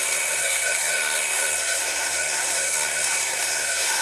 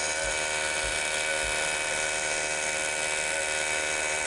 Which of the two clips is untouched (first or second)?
second